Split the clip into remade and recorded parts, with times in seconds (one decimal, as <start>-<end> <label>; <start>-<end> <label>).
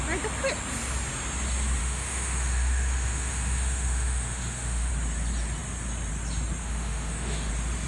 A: 0.0-1.8 recorded; 1.8-4.9 remade; 4.9-6.6 recorded; 6.6-7.5 remade; 7.5-7.9 recorded